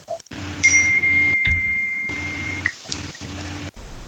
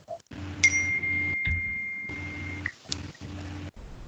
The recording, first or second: second